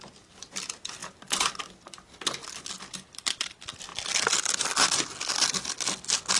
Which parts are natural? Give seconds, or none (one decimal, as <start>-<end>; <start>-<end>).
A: 0.0-6.4